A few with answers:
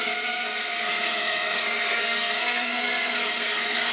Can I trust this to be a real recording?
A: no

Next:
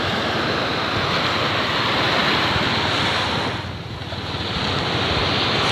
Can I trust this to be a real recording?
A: yes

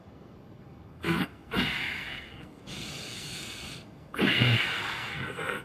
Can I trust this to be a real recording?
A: no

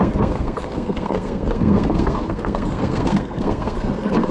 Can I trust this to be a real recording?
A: no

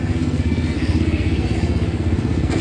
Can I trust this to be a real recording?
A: no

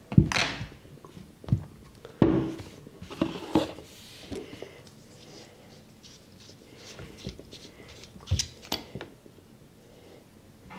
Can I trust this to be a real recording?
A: yes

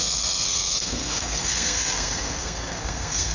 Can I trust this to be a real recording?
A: no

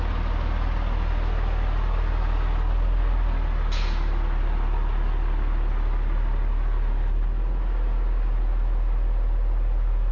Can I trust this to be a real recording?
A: yes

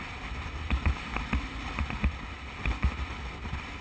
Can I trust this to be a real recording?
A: yes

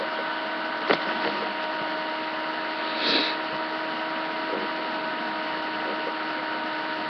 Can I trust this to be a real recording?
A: yes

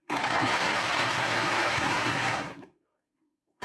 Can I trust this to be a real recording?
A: no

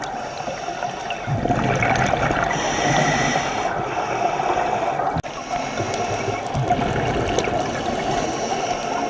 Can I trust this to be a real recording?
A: yes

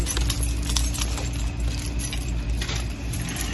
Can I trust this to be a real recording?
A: yes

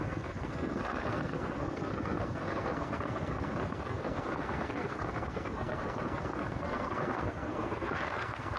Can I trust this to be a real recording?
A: no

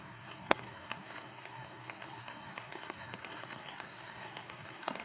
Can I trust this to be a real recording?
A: no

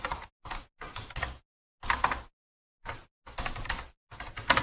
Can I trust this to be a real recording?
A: yes